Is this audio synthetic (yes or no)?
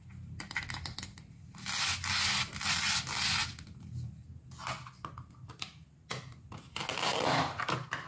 no